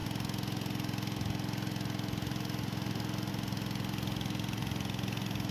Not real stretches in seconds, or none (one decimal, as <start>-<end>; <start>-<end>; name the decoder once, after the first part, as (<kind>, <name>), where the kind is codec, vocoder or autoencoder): none